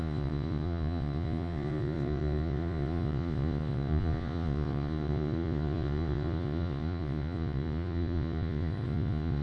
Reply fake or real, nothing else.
fake